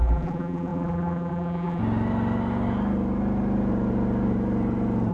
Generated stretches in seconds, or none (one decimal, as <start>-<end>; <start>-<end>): 0.0-1.8